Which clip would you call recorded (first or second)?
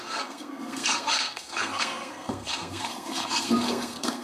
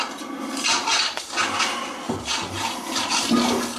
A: second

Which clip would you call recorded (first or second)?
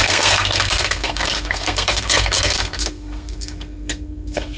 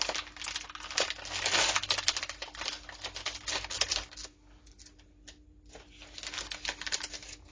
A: second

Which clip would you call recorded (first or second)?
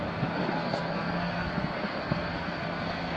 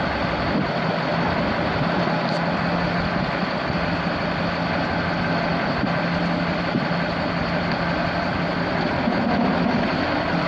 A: second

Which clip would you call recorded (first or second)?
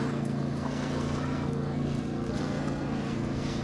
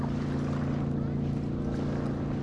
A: second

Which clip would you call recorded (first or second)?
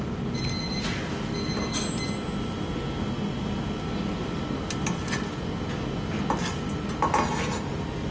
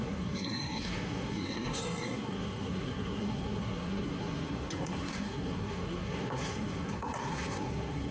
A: first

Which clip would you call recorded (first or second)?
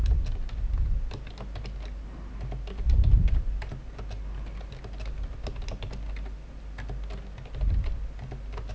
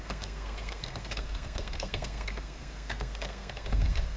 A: first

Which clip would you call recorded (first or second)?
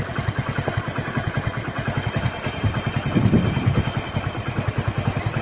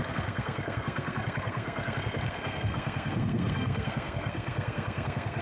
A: first